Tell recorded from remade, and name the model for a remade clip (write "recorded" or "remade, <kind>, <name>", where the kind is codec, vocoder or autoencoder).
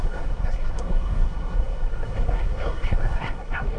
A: remade, codec, SNAC